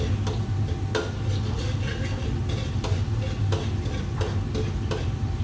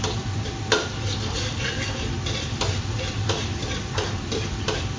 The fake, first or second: second